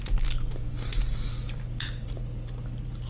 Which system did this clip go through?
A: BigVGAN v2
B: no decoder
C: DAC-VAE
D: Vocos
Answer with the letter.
B